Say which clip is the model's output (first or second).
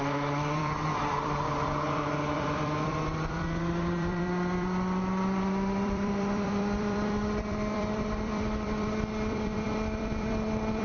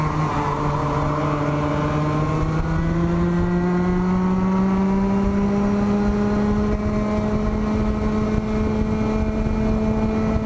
first